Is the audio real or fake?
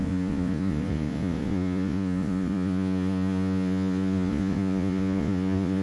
fake